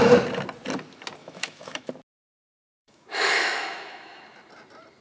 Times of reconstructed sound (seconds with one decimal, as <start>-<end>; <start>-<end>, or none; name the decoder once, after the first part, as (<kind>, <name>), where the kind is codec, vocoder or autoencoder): 1.2-1.9 (autoencoder, DAC-VAE); 2.5-4.2